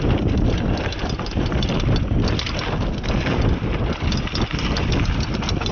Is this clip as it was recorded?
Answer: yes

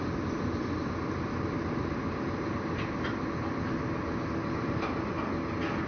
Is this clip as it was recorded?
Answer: yes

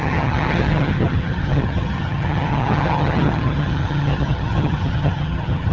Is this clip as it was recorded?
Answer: no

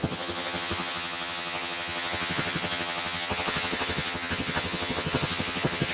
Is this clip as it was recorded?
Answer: no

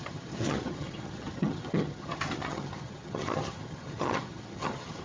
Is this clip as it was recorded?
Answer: no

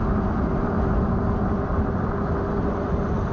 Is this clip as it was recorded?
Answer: yes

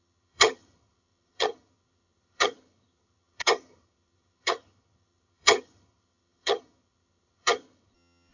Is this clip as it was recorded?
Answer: no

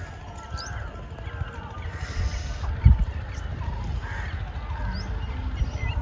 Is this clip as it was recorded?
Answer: yes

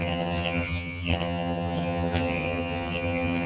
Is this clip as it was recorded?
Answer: no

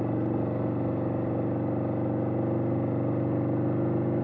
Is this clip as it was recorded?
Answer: yes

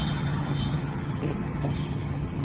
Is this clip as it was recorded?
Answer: no